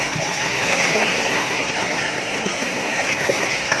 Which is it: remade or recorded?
remade